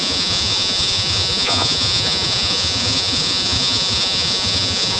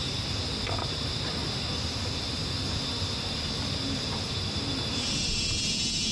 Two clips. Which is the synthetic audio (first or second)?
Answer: first